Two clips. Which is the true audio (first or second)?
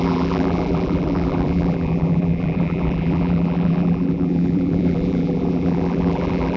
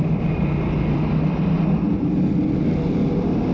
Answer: second